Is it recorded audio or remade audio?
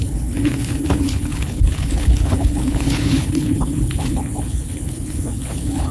remade